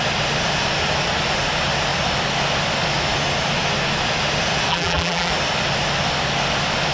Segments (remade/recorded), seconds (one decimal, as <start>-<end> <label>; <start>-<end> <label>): 0.0-4.7 recorded; 4.7-5.3 remade; 5.3-6.9 recorded